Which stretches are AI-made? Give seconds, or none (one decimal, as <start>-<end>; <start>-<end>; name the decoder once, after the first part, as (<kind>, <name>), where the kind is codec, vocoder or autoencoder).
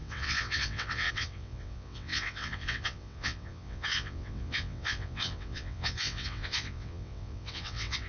0.0-8.1 (vocoder, WaveNeXt)